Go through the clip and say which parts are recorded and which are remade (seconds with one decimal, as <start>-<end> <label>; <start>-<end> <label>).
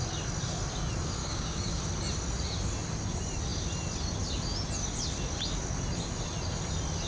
0.0-1.2 recorded; 1.2-1.8 remade; 1.8-7.1 recorded